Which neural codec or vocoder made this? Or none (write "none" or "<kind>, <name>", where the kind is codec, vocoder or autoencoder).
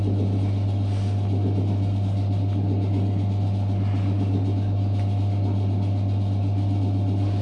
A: none